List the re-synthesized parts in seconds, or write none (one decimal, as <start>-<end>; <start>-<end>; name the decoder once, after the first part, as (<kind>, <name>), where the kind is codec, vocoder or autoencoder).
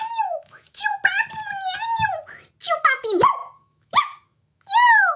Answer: 0.0-0.9 (autoencoder, DAC-VAE); 2.8-5.2